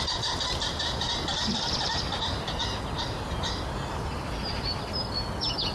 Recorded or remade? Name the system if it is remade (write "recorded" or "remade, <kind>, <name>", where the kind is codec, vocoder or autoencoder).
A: recorded